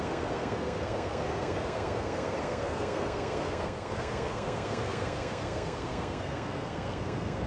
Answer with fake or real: fake